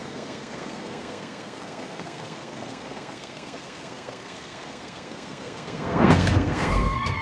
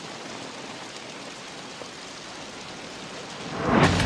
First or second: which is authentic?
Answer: second